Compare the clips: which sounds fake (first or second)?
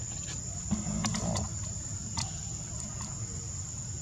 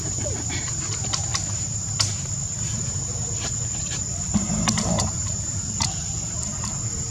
second